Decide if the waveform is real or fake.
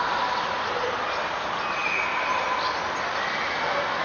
real